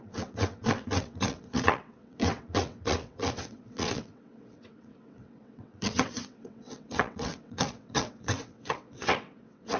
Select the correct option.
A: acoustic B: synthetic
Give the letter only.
B